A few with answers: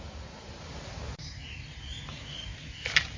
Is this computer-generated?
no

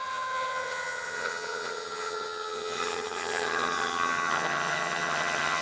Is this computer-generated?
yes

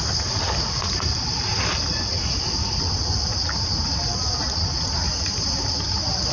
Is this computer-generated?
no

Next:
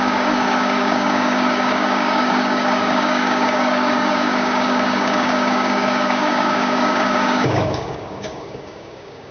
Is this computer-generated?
yes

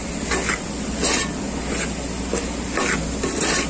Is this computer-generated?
no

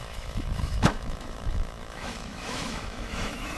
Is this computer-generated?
yes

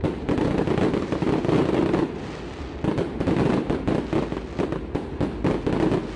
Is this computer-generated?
no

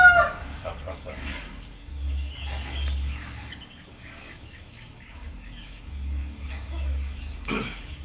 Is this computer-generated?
yes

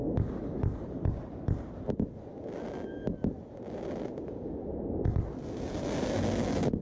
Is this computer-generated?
no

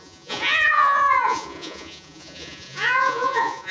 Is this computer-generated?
yes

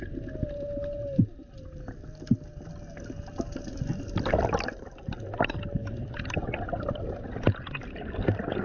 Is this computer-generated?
no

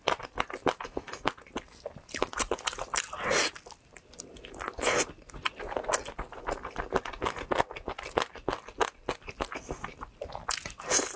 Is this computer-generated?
no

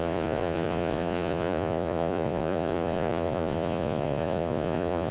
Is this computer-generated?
yes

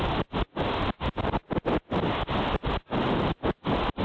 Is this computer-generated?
no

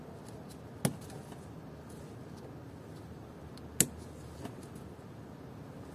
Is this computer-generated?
no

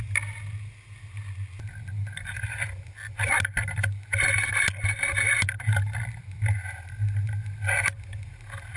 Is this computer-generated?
no